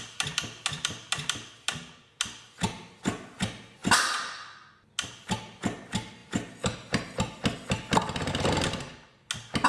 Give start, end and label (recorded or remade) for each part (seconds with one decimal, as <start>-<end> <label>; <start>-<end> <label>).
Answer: 0.0-9.7 recorded